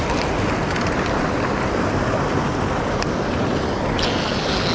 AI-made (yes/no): no